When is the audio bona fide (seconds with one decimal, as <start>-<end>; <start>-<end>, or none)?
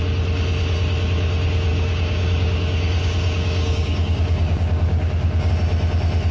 0.0-1.7; 5.5-6.3